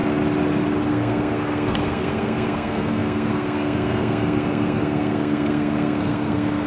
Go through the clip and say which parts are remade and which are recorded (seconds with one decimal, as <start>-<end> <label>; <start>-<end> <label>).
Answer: 0.0-0.9 recorded; 0.9-6.7 remade